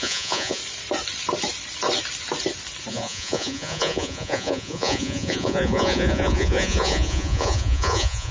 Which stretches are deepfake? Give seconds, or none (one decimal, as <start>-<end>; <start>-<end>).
0.0-0.6; 2.9-8.3